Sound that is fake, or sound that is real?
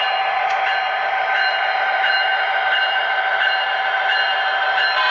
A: fake